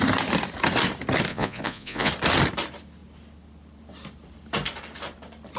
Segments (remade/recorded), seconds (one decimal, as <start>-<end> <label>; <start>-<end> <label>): 0.0-1.3 recorded; 1.3-2.1 remade; 2.1-5.6 recorded